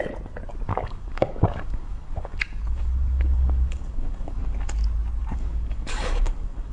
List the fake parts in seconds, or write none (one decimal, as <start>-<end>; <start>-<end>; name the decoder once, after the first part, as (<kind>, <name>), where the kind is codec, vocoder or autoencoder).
0.7-4.7 (codec, DAC); 5.2-6.7